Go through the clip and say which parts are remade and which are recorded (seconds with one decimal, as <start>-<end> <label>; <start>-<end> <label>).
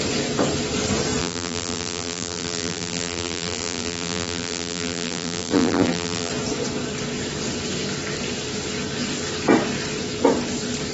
0.0-1.2 recorded; 1.2-6.3 remade; 6.3-10.9 recorded